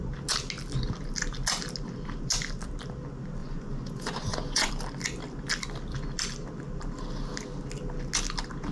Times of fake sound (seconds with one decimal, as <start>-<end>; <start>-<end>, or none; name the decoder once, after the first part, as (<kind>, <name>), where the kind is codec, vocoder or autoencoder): 3.4-4.7 (vocoder, Vocos)